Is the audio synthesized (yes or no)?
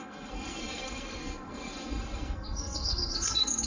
yes